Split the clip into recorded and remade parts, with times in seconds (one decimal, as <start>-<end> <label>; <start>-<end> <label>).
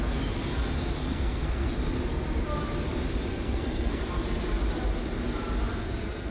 0.0-1.0 recorded; 1.0-1.7 remade; 1.7-3.3 recorded; 3.3-4.0 remade; 4.0-6.3 recorded